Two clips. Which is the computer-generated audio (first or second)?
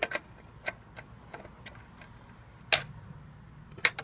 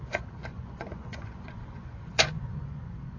second